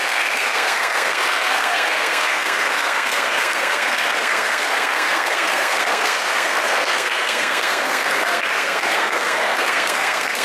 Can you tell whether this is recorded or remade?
remade